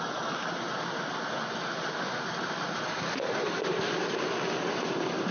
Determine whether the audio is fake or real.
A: real